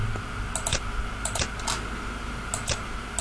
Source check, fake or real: real